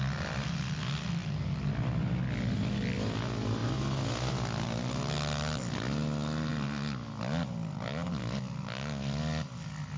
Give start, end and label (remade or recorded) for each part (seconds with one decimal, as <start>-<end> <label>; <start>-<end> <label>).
0.0-10.0 recorded